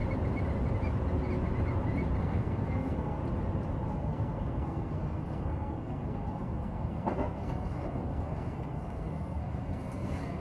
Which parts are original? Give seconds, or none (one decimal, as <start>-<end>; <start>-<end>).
0.0-2.2; 3.2-3.9